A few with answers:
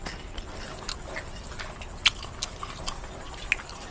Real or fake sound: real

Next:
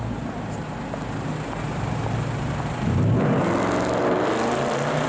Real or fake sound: real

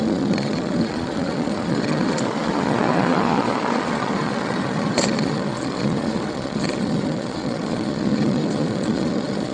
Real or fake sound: fake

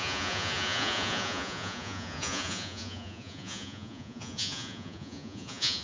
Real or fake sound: fake